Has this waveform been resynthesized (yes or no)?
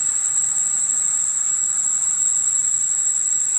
no